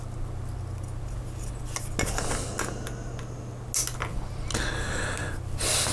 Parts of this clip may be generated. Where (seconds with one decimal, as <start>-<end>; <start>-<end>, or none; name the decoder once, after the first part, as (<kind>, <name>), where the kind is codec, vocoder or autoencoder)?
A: none